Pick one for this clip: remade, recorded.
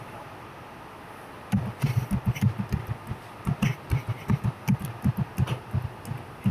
recorded